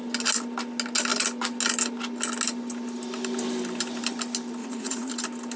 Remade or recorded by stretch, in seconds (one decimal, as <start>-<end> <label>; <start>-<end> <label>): 0.0-4.6 recorded; 4.6-5.1 remade; 5.1-5.6 recorded